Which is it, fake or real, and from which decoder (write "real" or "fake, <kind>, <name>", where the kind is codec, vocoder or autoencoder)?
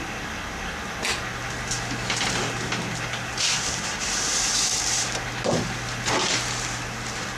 real